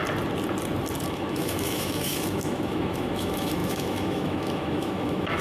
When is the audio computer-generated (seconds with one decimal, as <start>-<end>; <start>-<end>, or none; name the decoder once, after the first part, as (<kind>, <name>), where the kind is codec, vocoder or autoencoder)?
1.1-5.4 (autoencoder, DAC-VAE)

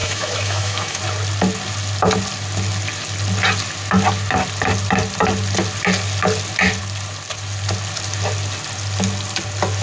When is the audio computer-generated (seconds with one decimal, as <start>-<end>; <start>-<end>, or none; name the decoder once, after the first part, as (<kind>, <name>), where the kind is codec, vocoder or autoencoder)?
0.0-1.0 (autoencoder, DAC-VAE)

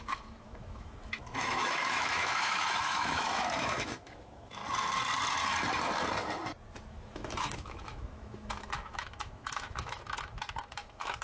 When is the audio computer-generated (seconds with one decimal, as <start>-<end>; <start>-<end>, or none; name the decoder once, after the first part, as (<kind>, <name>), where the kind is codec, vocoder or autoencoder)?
0.0-4.6 (autoencoder, DAC-VAE); 6.9-11.2

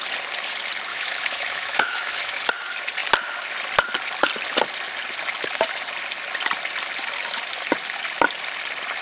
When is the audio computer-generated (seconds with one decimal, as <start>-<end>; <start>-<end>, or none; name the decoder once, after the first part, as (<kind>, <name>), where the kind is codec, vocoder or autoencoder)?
0.9-2.5 (autoencoder, DAC-VAE)

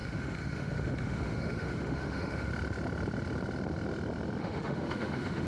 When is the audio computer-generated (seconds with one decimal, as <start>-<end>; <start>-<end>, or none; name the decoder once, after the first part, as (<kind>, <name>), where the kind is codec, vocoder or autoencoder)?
0.0-2.5 (autoencoder, DAC-VAE); 4.4-5.5

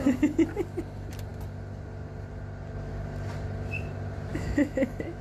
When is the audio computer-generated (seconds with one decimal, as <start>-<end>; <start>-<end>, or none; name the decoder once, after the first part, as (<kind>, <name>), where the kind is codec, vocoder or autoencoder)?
4.3-5.2 (autoencoder, DAC-VAE)

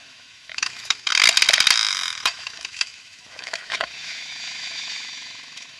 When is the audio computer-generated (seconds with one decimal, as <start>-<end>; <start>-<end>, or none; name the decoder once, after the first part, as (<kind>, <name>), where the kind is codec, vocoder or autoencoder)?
0.0-1.1 (autoencoder, DAC-VAE); 1.9-5.8

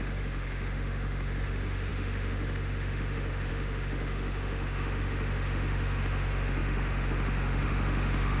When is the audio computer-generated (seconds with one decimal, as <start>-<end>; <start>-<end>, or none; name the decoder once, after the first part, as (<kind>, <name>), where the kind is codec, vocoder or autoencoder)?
0.0-8.4 (autoencoder, DAC-VAE)